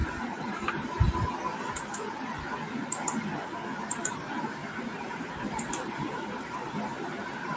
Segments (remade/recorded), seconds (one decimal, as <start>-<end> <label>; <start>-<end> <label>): 0.0-0.7 remade; 0.7-4.6 recorded; 4.6-7.6 remade